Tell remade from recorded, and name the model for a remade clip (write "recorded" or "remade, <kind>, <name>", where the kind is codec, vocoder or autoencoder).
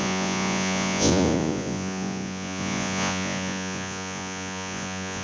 remade, vocoder, Vocos